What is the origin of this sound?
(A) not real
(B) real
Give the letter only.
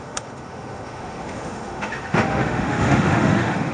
A